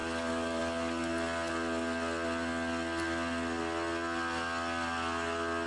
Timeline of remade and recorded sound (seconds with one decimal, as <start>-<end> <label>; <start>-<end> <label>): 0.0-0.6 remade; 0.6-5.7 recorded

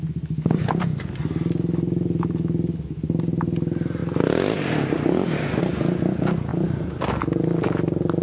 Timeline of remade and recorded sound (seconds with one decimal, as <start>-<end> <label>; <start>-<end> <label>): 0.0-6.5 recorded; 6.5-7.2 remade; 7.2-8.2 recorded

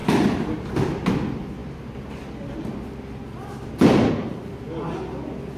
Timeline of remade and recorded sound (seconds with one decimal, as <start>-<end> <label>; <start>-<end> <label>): 0.0-0.7 remade; 0.7-5.6 recorded

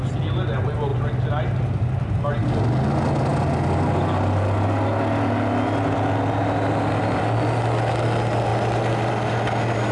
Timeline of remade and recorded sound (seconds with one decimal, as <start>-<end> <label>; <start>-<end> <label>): 0.0-9.9 recorded

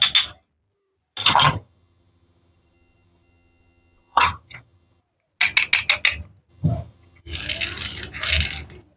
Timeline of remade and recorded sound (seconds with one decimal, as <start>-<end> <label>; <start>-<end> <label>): 0.0-1.2 recorded; 1.2-5.0 remade; 5.0-6.5 recorded; 6.5-7.2 remade; 7.2-9.0 recorded

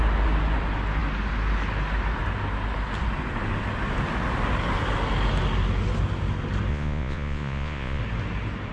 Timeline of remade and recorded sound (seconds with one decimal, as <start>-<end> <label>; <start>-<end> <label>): 0.0-6.7 recorded; 6.7-8.0 remade; 8.0-8.7 recorded

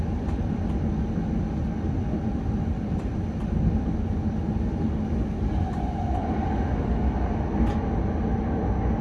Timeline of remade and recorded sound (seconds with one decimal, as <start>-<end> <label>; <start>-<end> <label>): 0.0-2.3 recorded; 2.3-4.0 remade; 4.0-9.0 recorded